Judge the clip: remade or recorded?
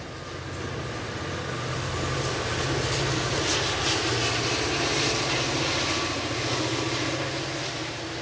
recorded